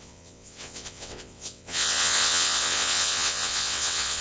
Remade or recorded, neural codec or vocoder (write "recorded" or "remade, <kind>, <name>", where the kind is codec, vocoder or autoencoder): remade, vocoder, WaveNeXt